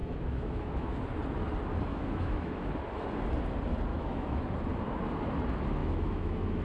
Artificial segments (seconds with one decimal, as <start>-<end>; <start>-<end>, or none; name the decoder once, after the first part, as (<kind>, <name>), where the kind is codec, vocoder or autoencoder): 0.0-1.0 (autoencoder, DAC-VAE); 1.9-2.7; 3.9-4.4; 5.8-6.6